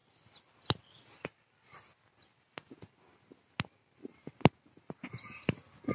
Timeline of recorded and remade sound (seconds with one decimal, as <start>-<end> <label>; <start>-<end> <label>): 0.0-5.9 recorded